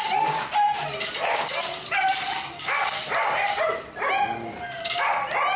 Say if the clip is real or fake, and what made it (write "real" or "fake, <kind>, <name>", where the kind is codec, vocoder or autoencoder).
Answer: real